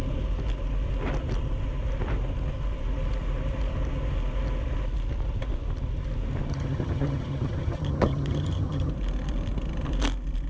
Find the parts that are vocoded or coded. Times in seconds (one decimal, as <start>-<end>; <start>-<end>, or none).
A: 6.5-8.9